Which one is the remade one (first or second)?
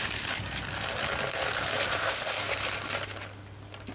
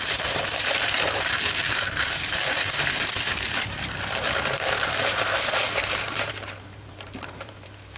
second